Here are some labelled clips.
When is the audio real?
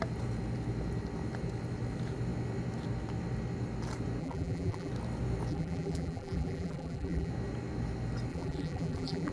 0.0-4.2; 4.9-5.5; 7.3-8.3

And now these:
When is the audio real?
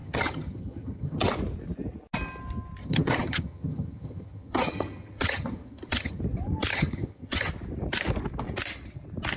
1.3-2.8; 6.2-6.7; 7.5-9.4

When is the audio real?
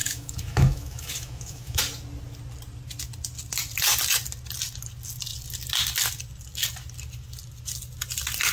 1.8-8.5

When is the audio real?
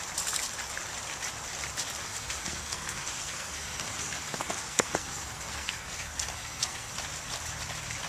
0.0-2.0; 6.9-8.1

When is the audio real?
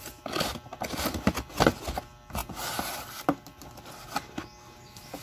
0.0-5.2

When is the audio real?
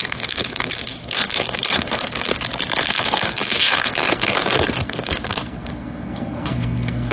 2.3-2.9